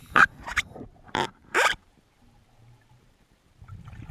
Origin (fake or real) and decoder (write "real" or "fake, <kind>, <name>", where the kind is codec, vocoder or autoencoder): fake, vocoder, BigVGAN v2